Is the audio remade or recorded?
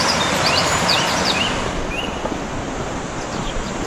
remade